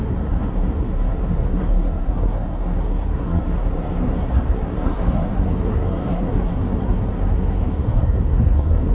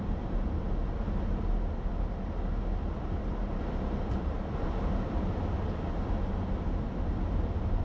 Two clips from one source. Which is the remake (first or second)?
first